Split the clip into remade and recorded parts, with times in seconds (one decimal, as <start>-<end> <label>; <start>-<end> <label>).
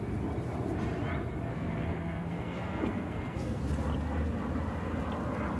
0.0-1.5 recorded; 1.5-3.6 remade; 3.6-5.6 recorded